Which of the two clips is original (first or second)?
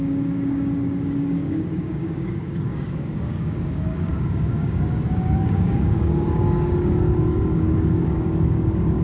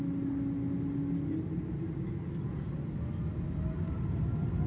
second